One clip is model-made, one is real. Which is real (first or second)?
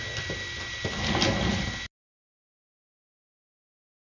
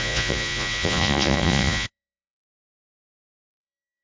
first